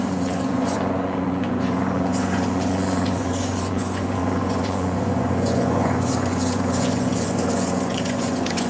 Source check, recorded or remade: remade